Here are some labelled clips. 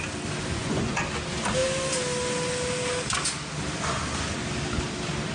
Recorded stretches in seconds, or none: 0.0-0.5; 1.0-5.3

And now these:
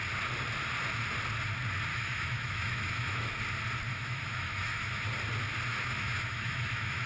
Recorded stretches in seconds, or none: 0.0-1.9; 3.4-3.9; 5.0-5.7

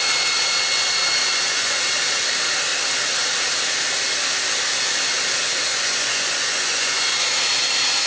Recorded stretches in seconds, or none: 0.0-1.2; 1.8-5.7; 7.3-8.1